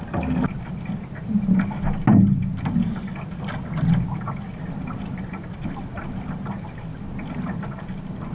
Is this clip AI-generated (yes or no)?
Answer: no